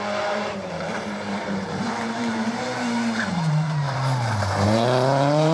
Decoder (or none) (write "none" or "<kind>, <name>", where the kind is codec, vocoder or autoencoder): vocoder, BigVGAN v2